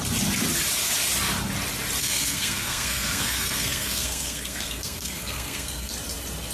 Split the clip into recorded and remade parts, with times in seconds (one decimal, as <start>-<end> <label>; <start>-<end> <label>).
0.0-2.0 recorded; 2.0-5.9 remade; 5.9-6.5 recorded